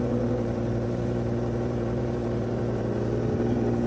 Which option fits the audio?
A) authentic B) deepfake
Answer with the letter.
B